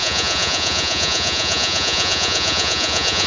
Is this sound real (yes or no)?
no